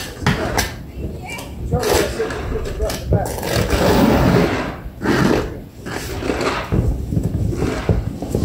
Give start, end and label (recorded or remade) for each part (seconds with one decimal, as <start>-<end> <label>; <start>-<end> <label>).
0.0-8.4 recorded